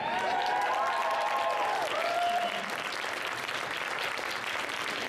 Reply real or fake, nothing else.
fake